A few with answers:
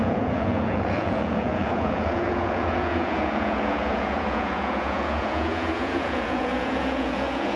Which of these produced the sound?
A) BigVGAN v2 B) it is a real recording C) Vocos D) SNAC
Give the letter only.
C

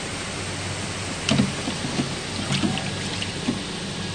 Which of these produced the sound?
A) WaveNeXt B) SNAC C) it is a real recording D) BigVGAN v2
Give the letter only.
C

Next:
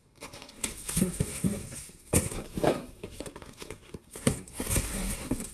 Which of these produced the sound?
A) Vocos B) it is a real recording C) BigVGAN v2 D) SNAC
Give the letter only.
D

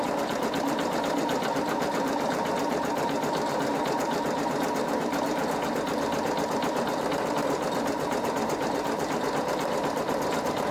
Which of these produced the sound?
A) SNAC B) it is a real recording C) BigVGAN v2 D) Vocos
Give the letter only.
C